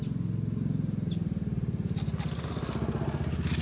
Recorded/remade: recorded